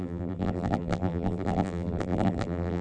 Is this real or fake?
fake